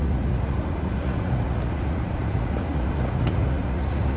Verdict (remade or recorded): remade